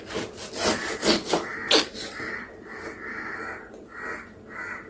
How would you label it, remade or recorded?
recorded